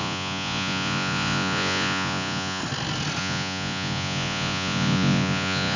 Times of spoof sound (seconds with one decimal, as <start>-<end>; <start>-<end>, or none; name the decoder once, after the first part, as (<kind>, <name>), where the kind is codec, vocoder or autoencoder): 0.0-2.6 (vocoder, Vocos); 3.2-5.8